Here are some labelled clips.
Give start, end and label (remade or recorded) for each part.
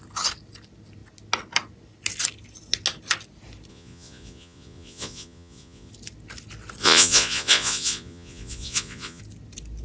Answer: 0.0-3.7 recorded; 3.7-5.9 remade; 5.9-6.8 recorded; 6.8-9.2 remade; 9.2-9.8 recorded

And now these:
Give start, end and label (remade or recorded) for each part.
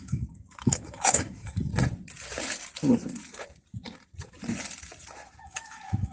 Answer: 0.0-1.7 remade; 1.7-5.4 recorded; 5.4-6.1 remade